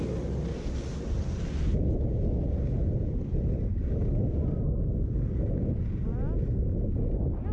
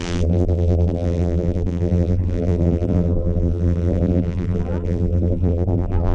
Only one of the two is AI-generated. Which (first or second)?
second